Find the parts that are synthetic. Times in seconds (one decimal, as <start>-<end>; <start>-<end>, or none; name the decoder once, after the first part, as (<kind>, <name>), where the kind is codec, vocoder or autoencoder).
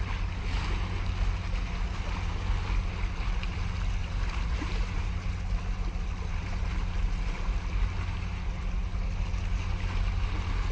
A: 4.0-5.1 (vocoder, BigVGAN v2); 6.4-7.1